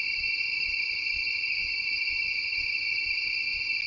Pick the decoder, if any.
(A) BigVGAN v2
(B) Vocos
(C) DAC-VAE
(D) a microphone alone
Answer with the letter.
D